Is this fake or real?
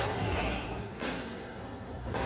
fake